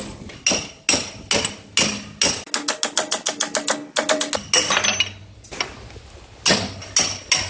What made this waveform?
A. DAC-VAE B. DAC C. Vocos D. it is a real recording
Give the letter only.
D